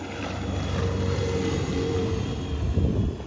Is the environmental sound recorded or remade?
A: recorded